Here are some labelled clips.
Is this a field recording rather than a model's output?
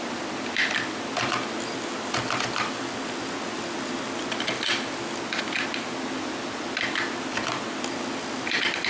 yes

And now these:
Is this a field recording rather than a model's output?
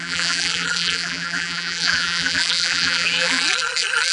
no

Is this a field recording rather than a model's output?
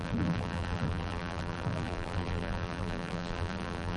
no